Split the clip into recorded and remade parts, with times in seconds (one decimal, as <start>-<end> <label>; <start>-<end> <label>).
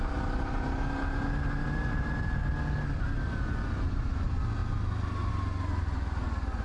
0.0-6.6 recorded